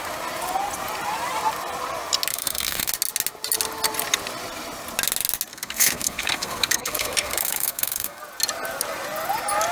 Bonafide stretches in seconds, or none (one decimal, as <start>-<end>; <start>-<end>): 0.0-2.3; 2.9-5.5; 8.2-9.7